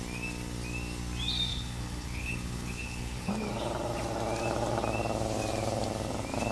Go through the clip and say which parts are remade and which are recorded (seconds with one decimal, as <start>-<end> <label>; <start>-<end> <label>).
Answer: 0.0-1.5 recorded; 1.5-3.3 remade; 3.3-6.5 recorded